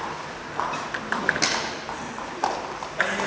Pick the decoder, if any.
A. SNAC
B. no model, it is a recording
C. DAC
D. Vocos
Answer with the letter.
B